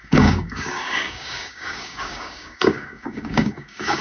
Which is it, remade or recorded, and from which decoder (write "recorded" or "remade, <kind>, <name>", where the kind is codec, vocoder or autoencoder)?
remade, codec, DAC